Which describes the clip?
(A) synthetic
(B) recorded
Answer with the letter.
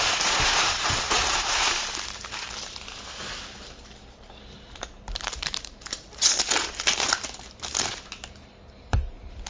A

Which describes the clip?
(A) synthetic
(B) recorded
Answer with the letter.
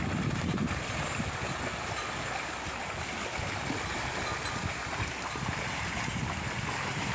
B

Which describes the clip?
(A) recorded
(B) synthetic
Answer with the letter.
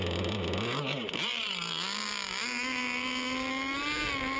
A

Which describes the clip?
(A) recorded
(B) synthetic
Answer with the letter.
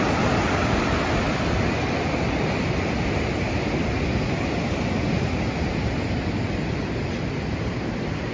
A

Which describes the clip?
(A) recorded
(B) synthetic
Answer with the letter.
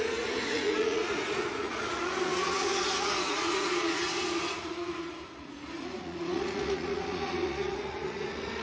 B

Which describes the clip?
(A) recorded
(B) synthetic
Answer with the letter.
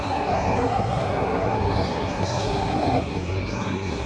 B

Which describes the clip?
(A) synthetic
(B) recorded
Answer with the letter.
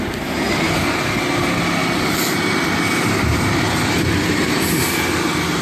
B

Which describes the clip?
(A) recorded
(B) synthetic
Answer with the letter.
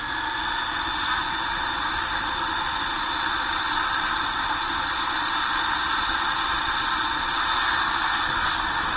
A